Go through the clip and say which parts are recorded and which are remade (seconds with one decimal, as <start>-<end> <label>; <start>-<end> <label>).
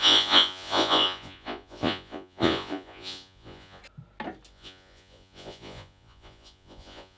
0.0-3.8 remade; 3.8-4.5 recorded; 4.5-7.2 remade